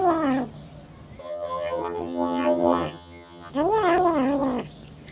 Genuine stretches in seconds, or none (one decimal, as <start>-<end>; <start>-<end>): 0.0-1.2; 3.5-5.1